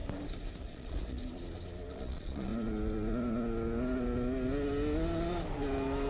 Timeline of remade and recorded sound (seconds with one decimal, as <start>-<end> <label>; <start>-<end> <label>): 0.0-0.6 recorded; 0.6-1.2 remade; 1.2-1.9 recorded; 1.9-2.5 remade; 2.5-6.1 recorded